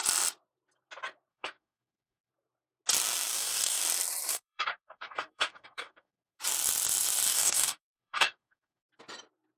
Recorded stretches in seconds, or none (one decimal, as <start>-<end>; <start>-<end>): 0.0-1.3; 2.3-3.3; 3.8-4.3; 6.4-7.3; 8.9-9.6